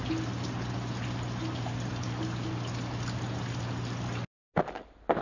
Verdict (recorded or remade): recorded